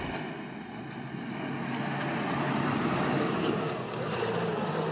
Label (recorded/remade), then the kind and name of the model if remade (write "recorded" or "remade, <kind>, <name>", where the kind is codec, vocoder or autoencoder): recorded